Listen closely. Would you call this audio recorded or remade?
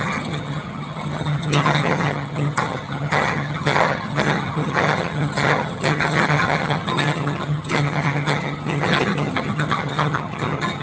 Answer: remade